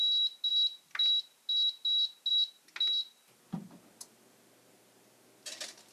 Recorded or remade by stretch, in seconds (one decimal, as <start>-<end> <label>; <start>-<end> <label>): 0.0-5.9 recorded